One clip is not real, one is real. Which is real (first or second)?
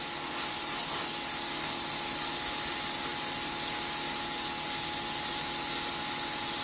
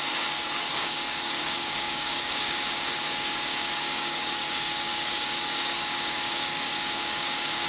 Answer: first